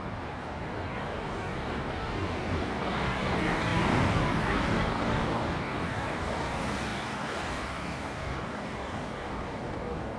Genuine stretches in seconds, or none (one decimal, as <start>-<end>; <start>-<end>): none

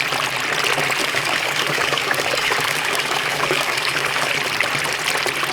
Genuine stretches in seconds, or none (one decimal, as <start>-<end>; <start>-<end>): 0.0-1.0; 4.3-5.5